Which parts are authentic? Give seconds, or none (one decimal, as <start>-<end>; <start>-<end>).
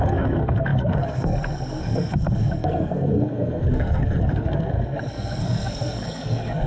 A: none